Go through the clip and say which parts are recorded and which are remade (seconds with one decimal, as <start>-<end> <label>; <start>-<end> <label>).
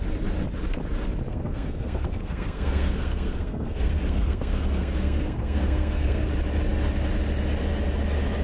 0.0-1.3 recorded; 1.3-6.3 remade; 6.3-8.4 recorded